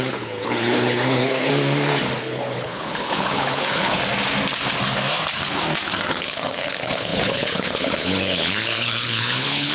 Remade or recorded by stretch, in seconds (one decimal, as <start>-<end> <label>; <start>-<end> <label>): 0.0-1.5 remade; 1.5-2.2 recorded; 2.2-4.0 remade; 4.0-6.1 recorded; 6.1-9.7 remade

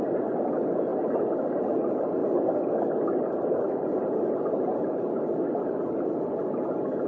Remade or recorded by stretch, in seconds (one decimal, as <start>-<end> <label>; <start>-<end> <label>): 0.0-7.1 recorded